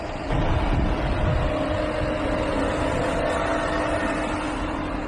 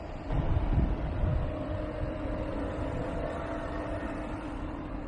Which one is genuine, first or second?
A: first